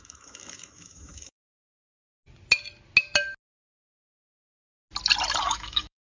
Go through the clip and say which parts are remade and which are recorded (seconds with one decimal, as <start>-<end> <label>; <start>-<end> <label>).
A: 0.0-1.7 remade; 1.7-5.4 recorded; 5.4-6.1 remade